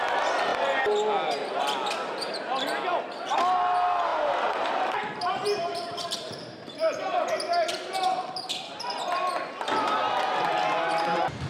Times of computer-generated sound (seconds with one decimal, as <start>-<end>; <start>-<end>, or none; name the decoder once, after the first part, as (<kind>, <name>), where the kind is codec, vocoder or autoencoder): 4.1-7.2 (vocoder, BigVGAN v2)